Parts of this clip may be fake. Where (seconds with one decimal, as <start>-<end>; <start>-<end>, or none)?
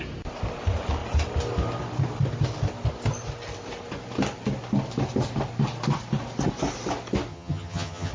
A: 7.3-8.1